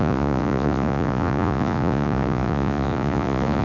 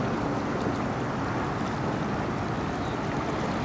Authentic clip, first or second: second